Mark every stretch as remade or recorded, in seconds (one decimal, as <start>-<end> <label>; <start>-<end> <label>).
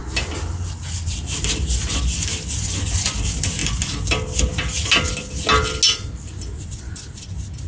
0.0-7.7 recorded